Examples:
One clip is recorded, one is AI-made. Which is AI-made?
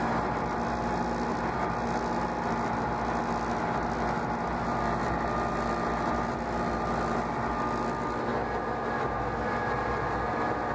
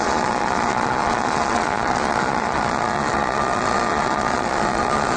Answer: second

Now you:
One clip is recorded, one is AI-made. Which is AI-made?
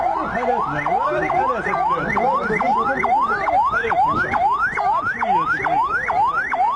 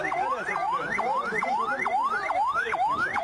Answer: second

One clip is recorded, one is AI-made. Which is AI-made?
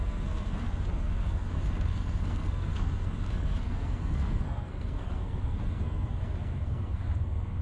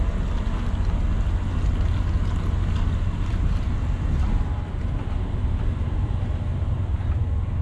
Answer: first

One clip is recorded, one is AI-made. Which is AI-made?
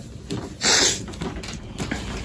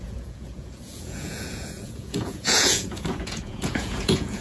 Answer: second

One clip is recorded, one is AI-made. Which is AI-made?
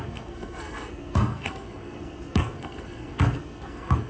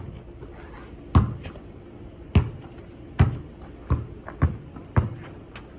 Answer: first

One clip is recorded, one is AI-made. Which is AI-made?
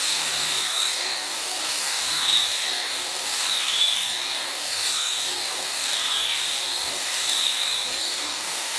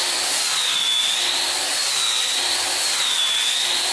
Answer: first